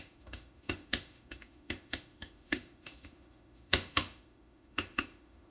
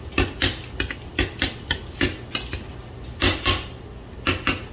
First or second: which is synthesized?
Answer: first